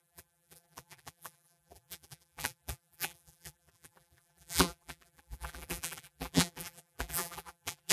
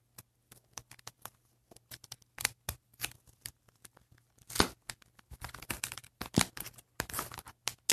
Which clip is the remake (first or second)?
first